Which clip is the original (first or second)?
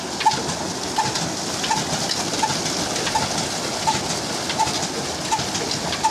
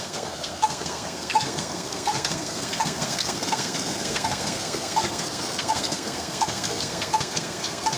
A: first